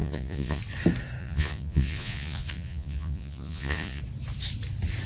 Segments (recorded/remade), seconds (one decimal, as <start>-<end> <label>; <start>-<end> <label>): 0.0-0.6 remade; 0.6-1.2 recorded; 1.2-4.0 remade; 4.0-5.1 recorded